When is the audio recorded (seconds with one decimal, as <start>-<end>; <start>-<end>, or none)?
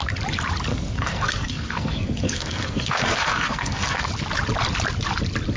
0.0-0.7; 4.1-5.6